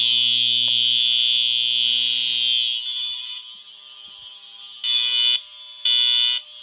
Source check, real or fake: real